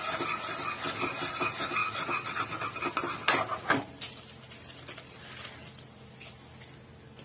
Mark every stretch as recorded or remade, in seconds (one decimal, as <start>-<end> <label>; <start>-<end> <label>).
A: 0.0-7.2 recorded